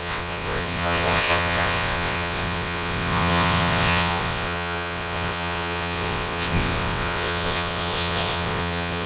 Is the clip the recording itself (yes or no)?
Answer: no